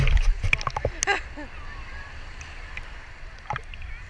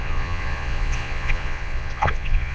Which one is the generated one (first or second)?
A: second